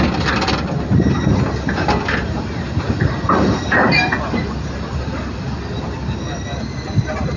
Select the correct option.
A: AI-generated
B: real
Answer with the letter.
B